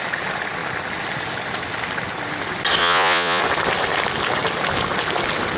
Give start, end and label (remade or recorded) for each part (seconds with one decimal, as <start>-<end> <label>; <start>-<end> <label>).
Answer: 0.0-2.8 recorded; 2.8-3.4 remade; 3.4-5.6 recorded